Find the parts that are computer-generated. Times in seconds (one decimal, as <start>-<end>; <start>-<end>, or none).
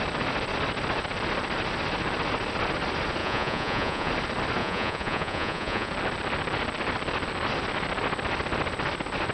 3.2-4.1; 4.6-5.9